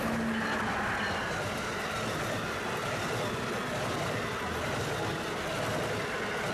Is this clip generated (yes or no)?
no